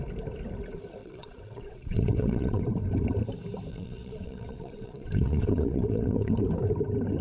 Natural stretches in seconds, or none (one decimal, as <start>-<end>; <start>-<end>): 0.0-1.0; 2.6-3.7; 6.3-7.2